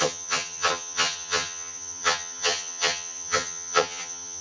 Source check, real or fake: fake